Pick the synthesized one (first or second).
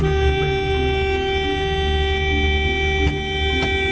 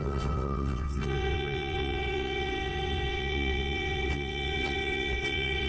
second